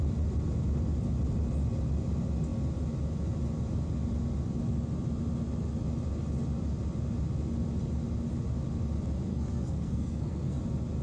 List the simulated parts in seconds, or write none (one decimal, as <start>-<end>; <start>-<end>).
9.3-10.6